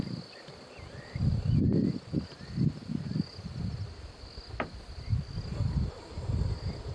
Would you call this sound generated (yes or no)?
no